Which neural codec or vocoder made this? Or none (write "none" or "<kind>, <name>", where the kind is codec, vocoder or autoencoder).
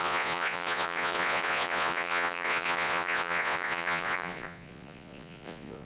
vocoder, Vocos